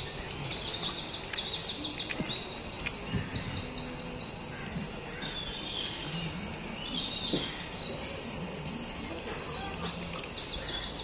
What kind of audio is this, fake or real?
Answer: real